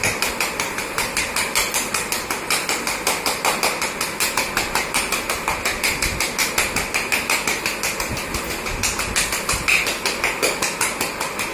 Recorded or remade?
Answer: recorded